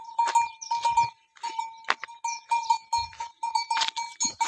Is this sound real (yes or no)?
yes